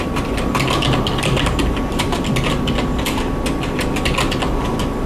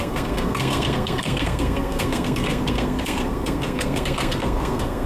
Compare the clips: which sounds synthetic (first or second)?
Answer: second